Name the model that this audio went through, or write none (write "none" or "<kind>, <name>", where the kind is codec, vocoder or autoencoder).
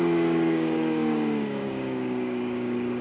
codec, DAC